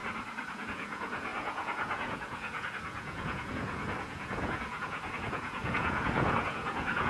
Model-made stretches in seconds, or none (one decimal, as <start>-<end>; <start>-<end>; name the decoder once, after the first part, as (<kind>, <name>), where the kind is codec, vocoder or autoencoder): 0.5-7.1 (vocoder, Vocos)